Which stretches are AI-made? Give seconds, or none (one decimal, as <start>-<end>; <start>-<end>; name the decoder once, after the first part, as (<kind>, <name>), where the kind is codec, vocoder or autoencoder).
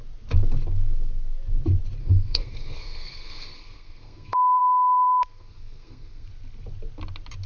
2.0-6.3 (codec, SNAC)